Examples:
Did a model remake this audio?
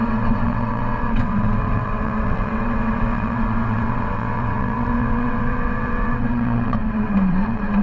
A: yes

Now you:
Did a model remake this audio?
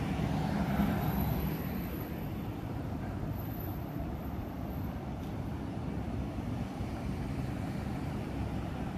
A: yes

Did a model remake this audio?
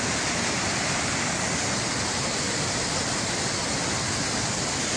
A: no